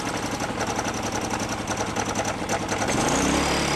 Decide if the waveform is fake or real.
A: real